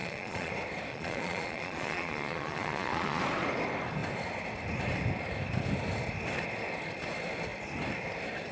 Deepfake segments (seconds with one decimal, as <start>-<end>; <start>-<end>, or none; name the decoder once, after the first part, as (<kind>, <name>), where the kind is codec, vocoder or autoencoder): 0.0-0.5 (vocoder, Vocos); 0.9-3.2